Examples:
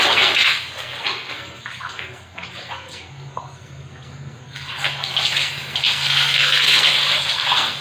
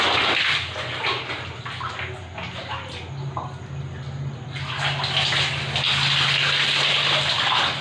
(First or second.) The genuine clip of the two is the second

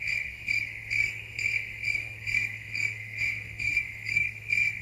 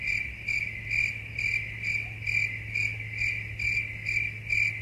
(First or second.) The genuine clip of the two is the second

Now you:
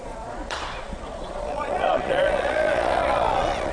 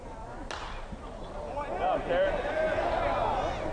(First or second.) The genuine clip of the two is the second